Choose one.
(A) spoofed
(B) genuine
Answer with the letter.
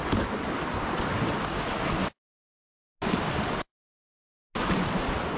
B